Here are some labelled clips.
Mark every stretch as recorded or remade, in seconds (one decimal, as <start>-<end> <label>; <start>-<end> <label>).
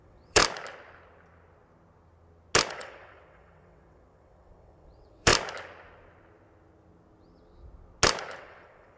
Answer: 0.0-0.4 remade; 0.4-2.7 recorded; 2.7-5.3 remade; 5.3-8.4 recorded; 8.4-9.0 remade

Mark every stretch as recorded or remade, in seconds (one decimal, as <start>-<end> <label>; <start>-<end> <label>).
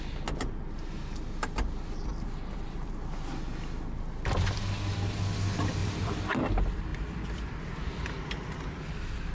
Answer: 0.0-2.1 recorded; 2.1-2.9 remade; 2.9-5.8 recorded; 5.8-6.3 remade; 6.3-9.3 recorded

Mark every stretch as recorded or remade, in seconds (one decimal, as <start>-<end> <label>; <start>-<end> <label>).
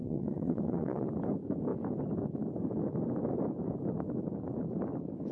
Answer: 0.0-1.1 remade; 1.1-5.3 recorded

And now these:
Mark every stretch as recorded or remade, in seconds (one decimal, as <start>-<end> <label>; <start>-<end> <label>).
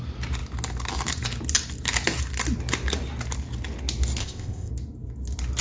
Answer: 0.0-4.2 recorded; 4.2-4.7 remade; 4.7-5.6 recorded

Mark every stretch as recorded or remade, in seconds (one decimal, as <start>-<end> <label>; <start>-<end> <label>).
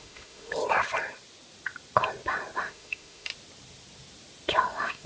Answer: 0.0-0.6 remade; 0.6-2.6 recorded; 2.6-3.3 remade; 3.3-4.6 recorded; 4.6-5.1 remade